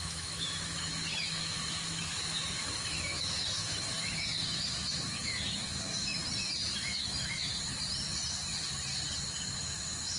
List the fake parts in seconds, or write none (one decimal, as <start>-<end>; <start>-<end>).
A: 0.0-6.2; 6.8-7.5; 9.3-10.2